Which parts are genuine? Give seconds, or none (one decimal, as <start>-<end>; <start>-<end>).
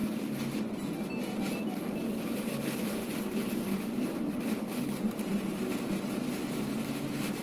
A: 0.0-7.4